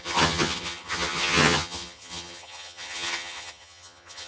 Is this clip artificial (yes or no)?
yes